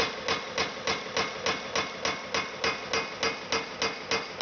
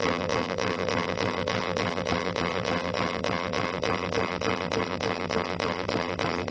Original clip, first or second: first